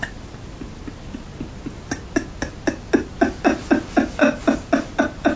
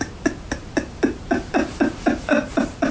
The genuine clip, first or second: first